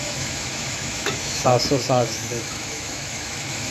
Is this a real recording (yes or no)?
no